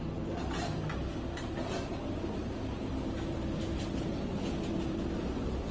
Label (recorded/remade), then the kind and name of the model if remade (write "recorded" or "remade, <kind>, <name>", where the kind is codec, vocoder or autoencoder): recorded